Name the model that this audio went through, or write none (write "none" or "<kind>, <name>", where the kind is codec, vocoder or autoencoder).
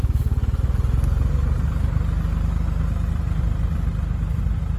none